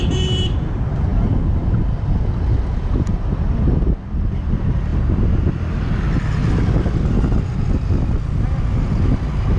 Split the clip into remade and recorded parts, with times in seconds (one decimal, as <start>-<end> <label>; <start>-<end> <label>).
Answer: 0.0-9.6 recorded